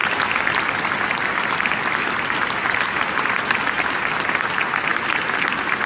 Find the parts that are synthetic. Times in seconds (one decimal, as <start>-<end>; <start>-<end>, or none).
none